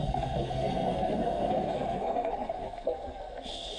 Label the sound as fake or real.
fake